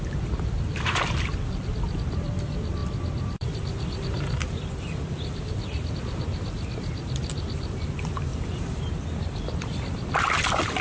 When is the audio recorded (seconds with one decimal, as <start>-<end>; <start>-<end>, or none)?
none